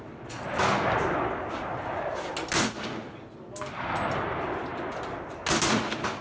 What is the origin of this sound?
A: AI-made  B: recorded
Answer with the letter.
B